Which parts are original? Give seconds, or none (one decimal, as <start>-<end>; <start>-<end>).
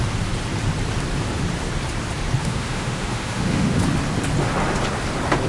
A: 0.0-2.4; 3.8-5.5